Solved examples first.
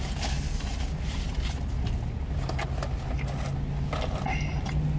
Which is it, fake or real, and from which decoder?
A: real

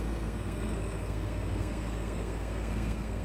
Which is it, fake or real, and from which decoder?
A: fake, codec, SNAC